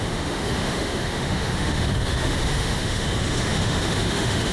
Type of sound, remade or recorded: remade